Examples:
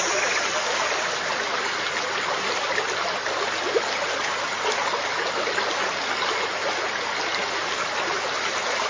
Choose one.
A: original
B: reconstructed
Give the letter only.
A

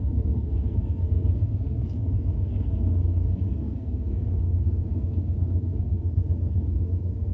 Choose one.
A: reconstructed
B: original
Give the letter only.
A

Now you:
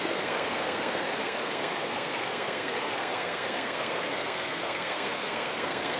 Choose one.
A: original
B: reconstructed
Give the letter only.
B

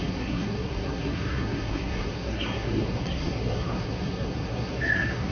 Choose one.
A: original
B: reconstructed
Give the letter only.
B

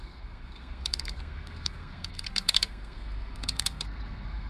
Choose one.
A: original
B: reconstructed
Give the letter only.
B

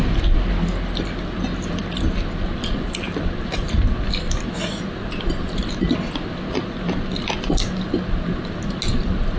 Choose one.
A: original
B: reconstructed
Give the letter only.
A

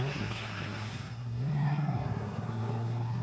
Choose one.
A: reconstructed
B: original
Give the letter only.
A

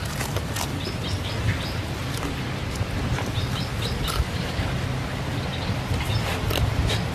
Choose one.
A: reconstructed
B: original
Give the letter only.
B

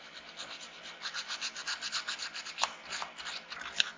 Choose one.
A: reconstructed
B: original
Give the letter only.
B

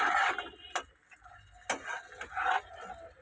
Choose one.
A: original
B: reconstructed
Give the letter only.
A